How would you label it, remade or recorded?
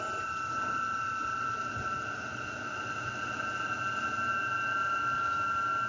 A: recorded